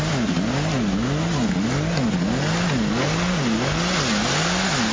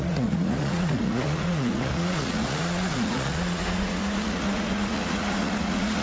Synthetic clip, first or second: second